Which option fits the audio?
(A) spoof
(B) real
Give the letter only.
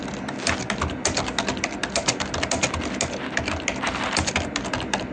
B